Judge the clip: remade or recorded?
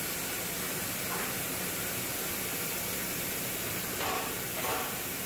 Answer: recorded